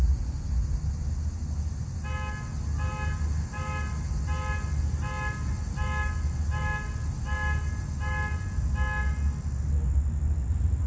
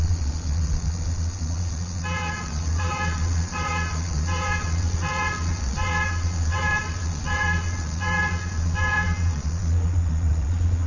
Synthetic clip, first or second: second